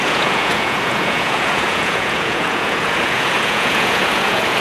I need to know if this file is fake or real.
fake